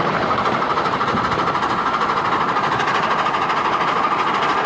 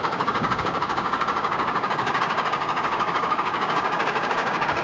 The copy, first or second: second